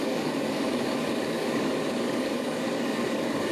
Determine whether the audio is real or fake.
fake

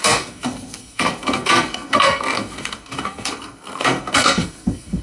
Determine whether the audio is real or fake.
fake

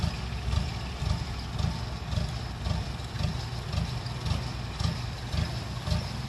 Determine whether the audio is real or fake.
real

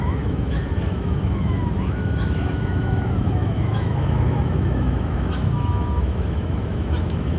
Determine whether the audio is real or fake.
fake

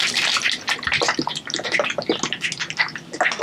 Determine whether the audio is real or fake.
real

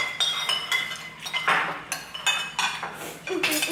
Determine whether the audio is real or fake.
real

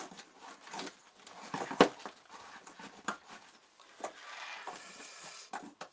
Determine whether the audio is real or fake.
real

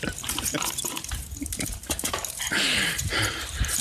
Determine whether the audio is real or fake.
fake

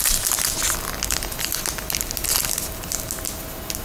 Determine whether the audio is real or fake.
real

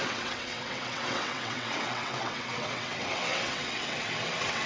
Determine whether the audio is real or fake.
fake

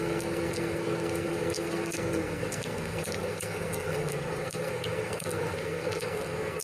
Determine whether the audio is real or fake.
fake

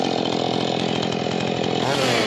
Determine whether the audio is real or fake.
real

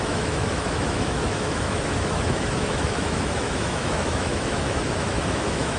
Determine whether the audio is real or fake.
fake